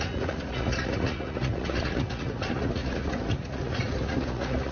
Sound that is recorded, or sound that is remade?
remade